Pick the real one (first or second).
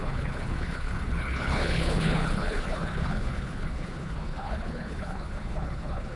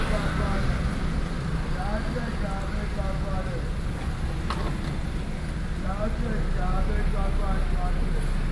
second